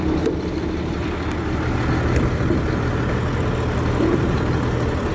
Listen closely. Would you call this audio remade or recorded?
recorded